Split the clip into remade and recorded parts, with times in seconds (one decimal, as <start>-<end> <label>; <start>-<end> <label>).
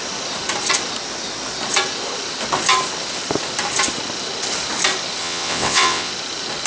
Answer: 0.0-5.2 recorded; 5.2-6.1 remade; 6.1-6.7 recorded